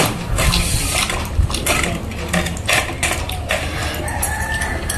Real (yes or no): yes